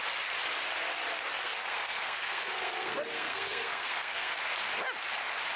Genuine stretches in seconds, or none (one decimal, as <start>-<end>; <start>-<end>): 0.0-1.4; 4.4-5.6